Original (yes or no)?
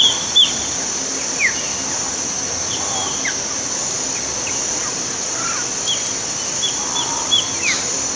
yes